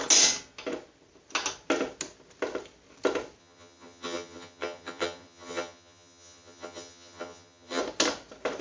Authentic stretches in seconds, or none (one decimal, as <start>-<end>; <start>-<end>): 0.0-3.4; 7.8-8.6